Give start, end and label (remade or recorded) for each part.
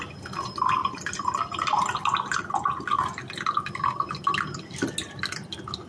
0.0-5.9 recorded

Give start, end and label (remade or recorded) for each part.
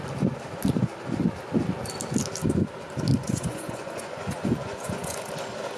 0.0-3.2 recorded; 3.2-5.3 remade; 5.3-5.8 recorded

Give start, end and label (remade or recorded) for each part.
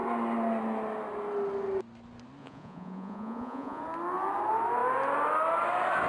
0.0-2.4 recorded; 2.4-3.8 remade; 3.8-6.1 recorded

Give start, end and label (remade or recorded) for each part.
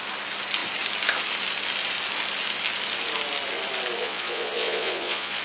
0.0-4.0 recorded; 4.0-5.4 remade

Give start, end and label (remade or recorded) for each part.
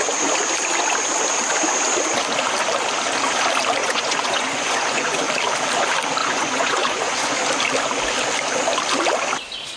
0.0-3.8 recorded; 3.8-5.2 remade; 5.2-6.2 recorded; 6.2-7.3 remade; 7.3-9.8 recorded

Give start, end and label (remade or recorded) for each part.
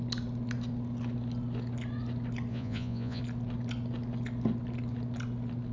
0.0-2.5 recorded; 2.5-3.2 remade; 3.2-5.7 recorded